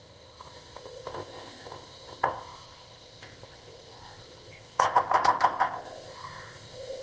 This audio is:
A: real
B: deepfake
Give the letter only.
B